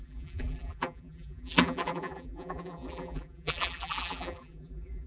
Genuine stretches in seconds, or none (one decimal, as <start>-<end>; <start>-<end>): none